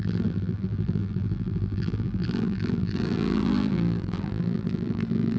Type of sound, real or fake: fake